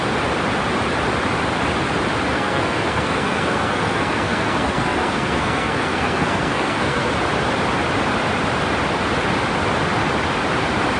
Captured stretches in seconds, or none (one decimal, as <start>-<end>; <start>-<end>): 0.0-2.3; 7.1-11.0